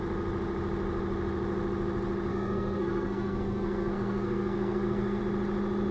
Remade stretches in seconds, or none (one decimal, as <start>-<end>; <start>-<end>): 2.3-5.2